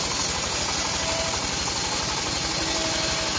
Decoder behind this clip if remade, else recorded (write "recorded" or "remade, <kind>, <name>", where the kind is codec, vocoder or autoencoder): recorded